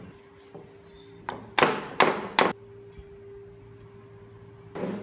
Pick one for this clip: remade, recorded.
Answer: recorded